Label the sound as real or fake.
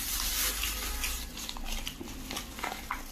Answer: real